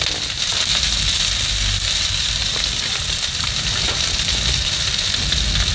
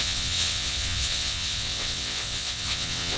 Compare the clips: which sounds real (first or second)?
first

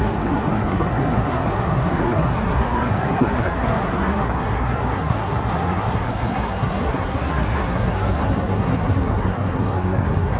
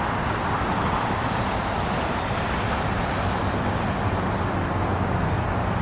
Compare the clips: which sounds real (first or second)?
second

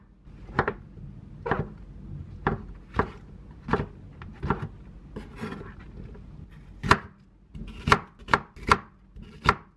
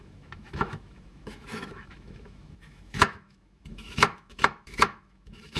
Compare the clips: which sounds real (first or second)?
first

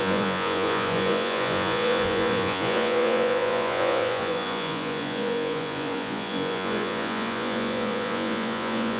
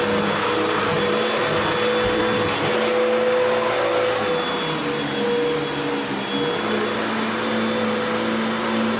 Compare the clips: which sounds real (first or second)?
second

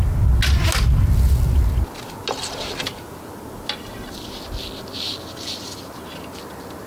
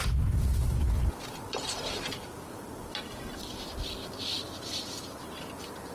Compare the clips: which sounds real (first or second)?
first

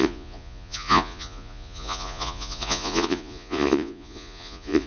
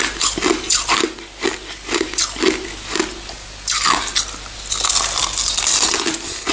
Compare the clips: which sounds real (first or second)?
second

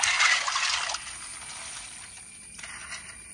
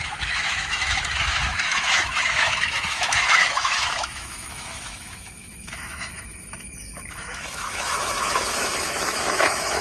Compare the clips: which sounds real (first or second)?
first